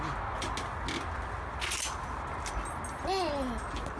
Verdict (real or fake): real